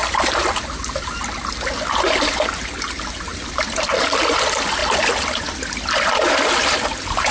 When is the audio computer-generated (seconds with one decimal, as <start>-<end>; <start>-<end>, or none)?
0.0-0.6; 3.3-3.9; 4.8-6.0